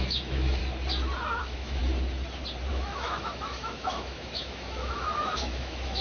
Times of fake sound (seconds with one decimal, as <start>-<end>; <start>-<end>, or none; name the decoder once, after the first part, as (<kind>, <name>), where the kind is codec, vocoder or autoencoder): 0.0-0.6 (autoencoder, DAC-VAE); 1.4-1.8; 2.7-6.0